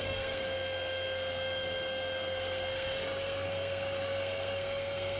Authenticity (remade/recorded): remade